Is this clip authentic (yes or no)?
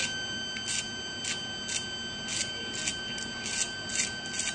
yes